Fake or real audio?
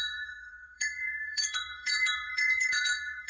fake